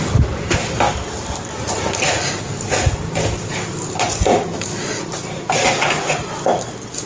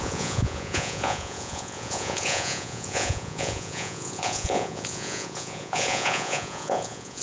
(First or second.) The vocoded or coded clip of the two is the second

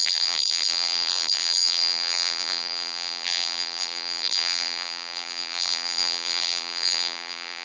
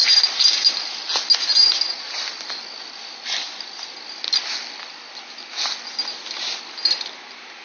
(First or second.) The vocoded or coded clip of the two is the first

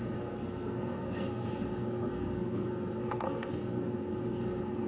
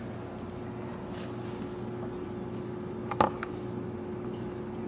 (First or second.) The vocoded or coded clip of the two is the first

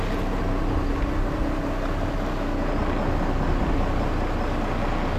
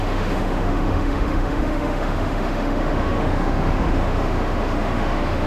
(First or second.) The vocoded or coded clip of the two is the second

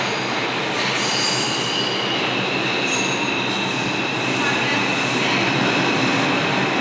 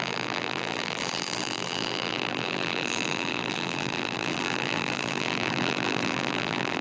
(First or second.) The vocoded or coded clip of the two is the second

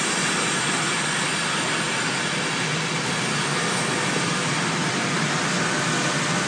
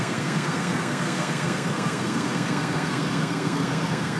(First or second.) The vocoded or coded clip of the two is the second